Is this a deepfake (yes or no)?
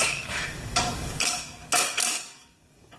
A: yes